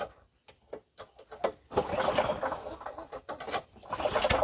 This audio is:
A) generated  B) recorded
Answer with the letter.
B